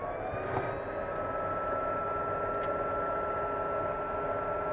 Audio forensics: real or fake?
real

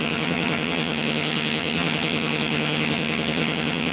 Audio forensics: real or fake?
fake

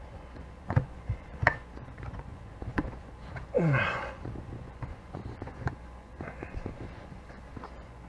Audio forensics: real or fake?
fake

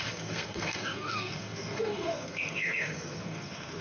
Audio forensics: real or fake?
fake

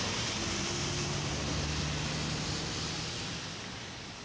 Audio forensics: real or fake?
real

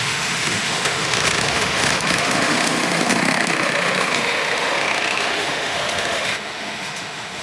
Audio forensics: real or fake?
fake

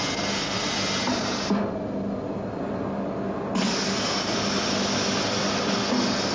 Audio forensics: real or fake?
real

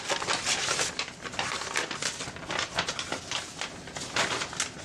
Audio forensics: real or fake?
real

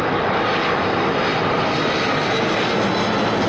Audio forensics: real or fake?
real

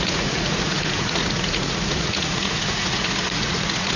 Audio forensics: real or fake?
fake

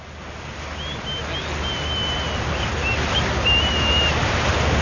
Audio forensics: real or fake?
real